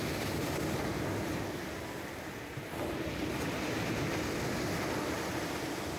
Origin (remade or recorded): recorded